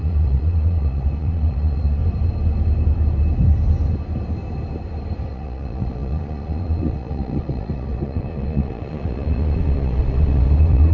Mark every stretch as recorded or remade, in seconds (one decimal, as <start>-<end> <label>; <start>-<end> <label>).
0.0-2.0 remade; 2.0-5.3 recorded; 5.3-10.9 remade